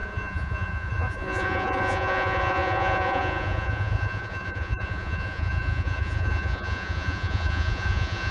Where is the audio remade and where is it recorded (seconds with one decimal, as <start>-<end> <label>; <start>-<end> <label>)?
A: 0.0-8.3 remade